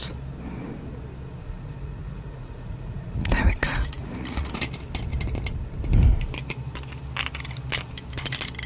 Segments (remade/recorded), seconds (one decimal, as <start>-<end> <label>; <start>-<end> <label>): 0.0-1.4 recorded; 1.4-4.5 remade; 4.5-8.7 recorded